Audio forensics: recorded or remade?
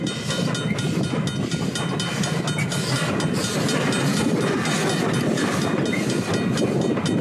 recorded